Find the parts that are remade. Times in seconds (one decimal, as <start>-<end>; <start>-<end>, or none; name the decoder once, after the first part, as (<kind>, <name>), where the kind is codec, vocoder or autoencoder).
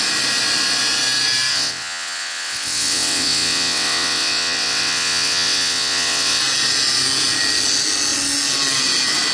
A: 1.5-6.4 (vocoder, WaveNeXt)